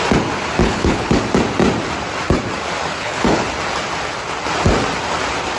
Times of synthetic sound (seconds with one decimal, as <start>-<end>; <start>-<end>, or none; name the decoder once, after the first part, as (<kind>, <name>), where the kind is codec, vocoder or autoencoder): 0.6-1.2 (codec, HILCodec); 2.9-3.5